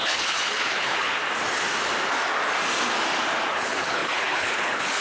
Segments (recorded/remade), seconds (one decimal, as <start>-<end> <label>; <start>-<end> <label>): 0.0-1.2 remade; 1.2-3.5 recorded; 3.5-5.0 remade